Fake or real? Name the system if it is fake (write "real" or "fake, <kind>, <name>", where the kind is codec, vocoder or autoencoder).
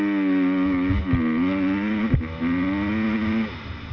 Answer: real